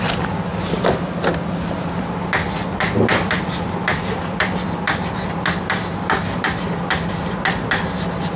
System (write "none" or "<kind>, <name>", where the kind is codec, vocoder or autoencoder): none